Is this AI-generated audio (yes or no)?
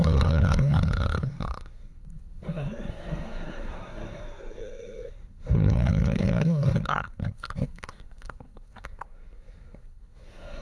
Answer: yes